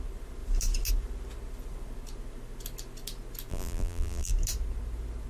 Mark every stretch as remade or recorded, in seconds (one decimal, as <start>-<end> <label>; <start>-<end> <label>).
0.0-3.5 recorded; 3.5-4.3 remade; 4.3-5.3 recorded